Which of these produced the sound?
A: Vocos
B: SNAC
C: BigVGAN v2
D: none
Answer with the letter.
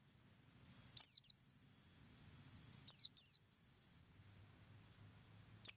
D